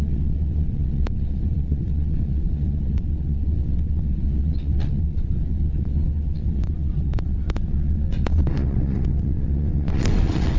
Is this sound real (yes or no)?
no